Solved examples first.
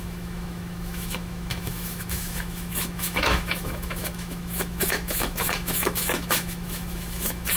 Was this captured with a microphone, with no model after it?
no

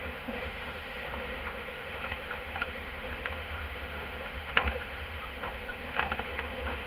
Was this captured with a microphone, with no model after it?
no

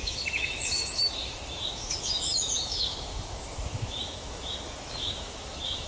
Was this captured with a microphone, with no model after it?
no